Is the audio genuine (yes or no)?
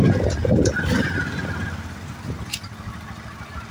yes